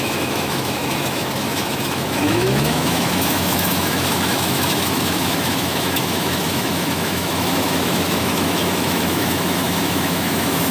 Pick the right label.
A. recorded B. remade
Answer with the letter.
B